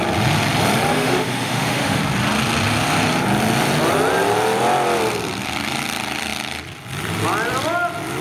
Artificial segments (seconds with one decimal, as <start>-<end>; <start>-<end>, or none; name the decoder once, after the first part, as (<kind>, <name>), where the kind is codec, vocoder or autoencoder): 0.9-2.0 (autoencoder, DAC-VAE)